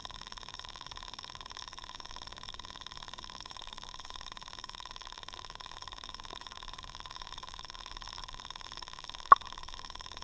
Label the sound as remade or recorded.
remade